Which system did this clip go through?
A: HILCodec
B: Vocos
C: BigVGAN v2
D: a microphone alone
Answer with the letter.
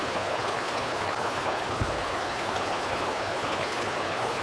A